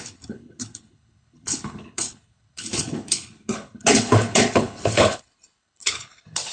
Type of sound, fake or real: fake